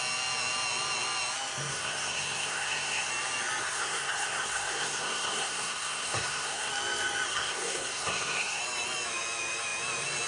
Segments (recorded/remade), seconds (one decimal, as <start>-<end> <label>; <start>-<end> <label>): 0.0-1.7 recorded; 1.7-3.1 remade; 3.1-3.6 recorded; 3.6-6.7 remade; 6.7-7.3 recorded; 7.3-8.6 remade; 8.6-10.3 recorded

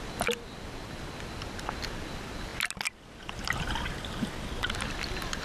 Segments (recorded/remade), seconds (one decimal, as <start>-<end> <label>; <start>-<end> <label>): 0.0-5.4 recorded

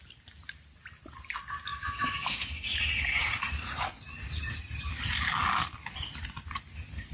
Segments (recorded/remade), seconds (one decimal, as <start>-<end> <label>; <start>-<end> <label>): 0.0-1.7 recorded; 1.7-2.5 remade; 2.5-7.1 recorded